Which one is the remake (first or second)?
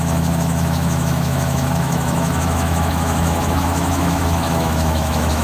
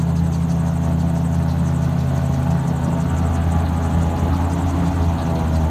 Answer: first